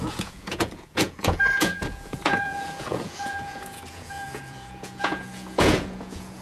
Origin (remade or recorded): remade